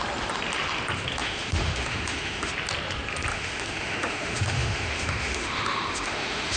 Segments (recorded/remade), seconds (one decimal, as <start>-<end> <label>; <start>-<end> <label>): 0.0-1.2 recorded; 1.2-2.5 remade; 2.5-3.3 recorded; 3.3-6.6 remade